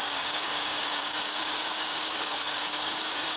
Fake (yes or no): yes